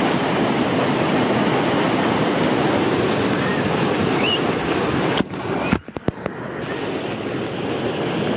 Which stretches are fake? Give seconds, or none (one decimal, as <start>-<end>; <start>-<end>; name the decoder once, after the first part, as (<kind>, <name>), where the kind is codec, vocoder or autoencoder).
3.5-6.0 (vocoder, BigVGAN v2)